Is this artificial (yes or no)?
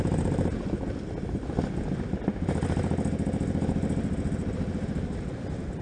no